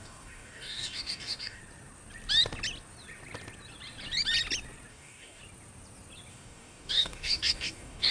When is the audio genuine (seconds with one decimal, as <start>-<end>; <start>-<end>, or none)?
1.6-4.9; 5.4-6.3